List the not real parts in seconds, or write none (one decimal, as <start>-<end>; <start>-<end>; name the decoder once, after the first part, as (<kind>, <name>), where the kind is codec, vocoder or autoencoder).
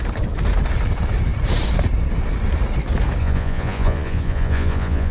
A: 3.2-5.1 (vocoder, Vocos)